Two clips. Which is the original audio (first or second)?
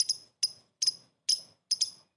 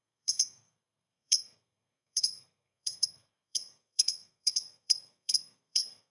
first